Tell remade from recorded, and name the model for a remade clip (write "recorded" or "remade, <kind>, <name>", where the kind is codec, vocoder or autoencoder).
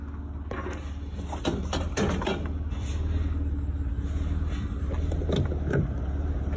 recorded